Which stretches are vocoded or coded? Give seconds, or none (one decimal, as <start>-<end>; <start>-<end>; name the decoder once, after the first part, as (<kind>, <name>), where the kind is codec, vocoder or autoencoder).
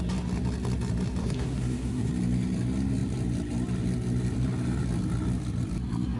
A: 1.2-2.1 (codec, SNAC)